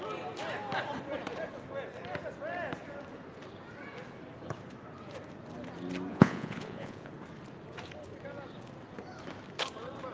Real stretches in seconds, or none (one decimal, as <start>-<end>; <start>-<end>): 0.0-6.1; 7.1-10.1